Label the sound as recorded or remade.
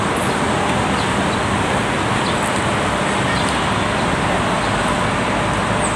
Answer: recorded